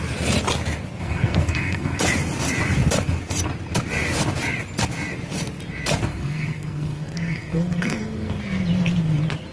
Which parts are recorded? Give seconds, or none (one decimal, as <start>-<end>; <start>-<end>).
0.0-1.0; 2.0-6.1; 8.4-9.5